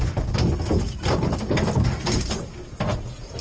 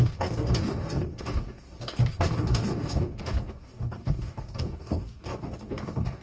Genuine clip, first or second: first